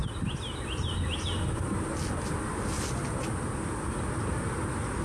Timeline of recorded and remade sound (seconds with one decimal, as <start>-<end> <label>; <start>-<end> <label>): 0.0-5.0 recorded